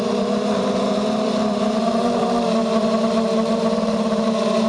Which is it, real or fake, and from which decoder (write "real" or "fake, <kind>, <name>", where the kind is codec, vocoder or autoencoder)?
fake, vocoder, BigVGAN v2